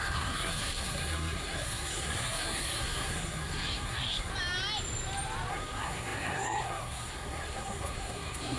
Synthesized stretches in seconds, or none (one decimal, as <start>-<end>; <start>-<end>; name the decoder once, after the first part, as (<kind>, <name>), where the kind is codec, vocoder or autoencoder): 0.0-4.3 (codec, SNAC); 5.5-8.6